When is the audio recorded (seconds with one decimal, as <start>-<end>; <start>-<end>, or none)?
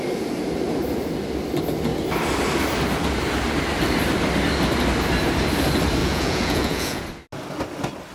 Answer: 0.0-6.0; 7.0-8.1